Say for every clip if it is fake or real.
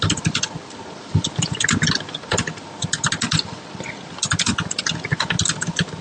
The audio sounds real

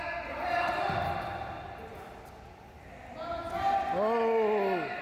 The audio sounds real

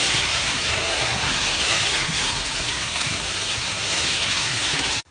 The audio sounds fake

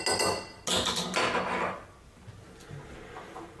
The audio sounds real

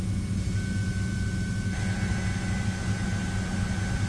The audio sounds real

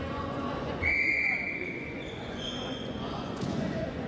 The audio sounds fake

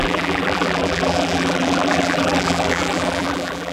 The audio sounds fake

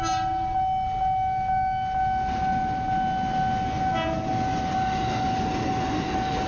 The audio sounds real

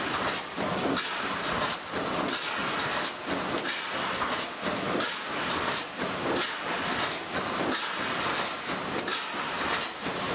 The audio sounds real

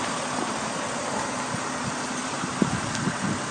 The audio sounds real